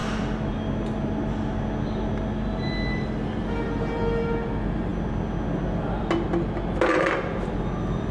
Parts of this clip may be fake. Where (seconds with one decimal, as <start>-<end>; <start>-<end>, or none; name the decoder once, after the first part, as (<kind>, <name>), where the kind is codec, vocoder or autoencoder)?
none